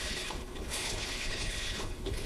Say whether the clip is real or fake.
fake